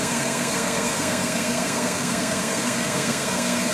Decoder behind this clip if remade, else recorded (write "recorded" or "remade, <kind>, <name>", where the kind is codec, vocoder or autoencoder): remade, codec, SNAC